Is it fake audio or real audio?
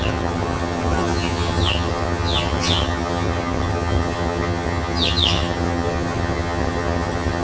fake